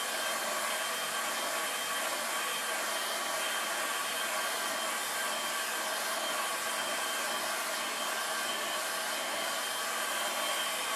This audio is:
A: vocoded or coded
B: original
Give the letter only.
B